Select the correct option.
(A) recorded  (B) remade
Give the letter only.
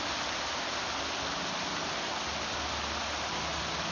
A